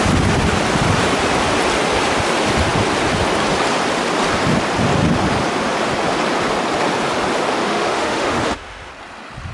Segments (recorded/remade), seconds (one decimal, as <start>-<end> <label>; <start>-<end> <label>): 0.0-7.6 recorded; 7.6-8.9 remade; 8.9-9.5 recorded